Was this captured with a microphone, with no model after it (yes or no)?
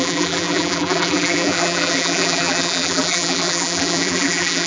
no